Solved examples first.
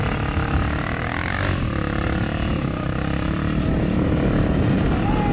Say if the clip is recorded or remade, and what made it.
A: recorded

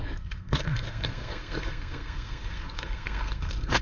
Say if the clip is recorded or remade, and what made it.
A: remade, codec, SNAC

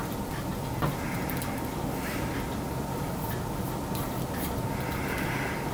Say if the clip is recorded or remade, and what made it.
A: recorded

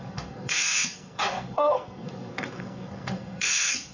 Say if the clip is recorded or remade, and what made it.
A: remade, codec, SNAC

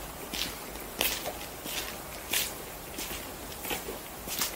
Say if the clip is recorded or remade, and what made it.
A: recorded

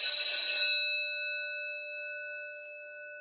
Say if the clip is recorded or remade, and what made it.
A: recorded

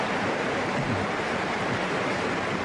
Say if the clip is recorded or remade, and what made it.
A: remade, vocoder, BigVGAN v2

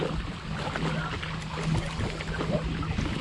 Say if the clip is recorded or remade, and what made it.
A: recorded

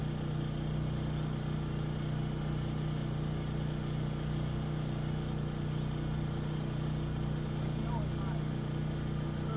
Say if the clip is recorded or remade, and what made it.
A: recorded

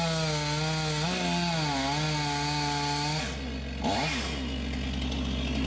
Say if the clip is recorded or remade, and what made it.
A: recorded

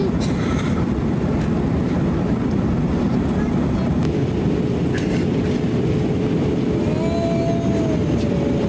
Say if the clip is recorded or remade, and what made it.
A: recorded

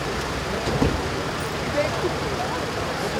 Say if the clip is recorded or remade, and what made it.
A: remade, vocoder, BigVGAN v2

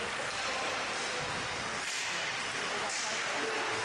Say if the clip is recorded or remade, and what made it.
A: recorded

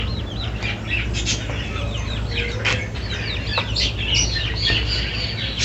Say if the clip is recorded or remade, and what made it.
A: recorded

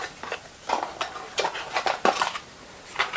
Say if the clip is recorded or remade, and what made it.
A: recorded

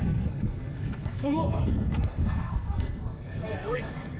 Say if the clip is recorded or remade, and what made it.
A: remade, codec, SNAC